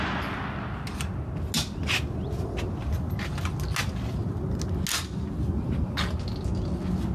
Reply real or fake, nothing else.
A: real